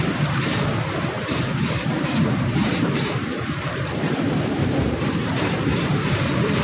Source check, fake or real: fake